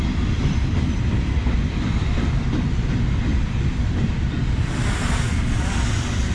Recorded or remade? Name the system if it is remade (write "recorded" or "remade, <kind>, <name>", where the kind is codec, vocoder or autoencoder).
remade, vocoder, BigVGAN v2